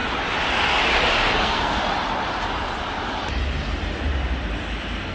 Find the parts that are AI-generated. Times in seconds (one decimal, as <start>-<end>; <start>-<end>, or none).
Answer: 1.4-1.8